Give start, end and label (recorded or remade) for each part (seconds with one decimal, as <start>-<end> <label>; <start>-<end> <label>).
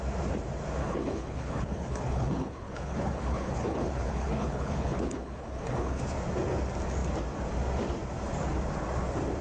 0.0-0.8 recorded; 0.8-6.0 remade; 6.0-9.4 recorded